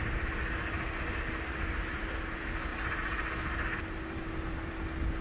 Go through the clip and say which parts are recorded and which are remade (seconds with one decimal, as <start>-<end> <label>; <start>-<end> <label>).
0.0-5.2 recorded